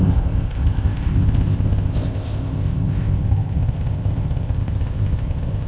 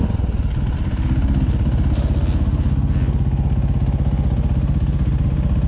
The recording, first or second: second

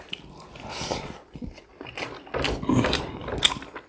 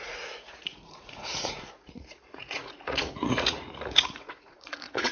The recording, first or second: first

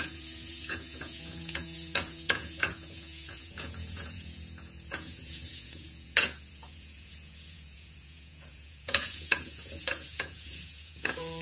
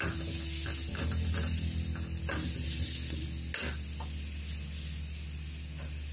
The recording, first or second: second